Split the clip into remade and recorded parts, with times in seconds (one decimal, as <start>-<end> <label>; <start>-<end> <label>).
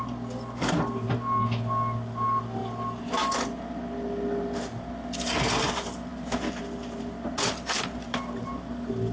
0.0-9.1 recorded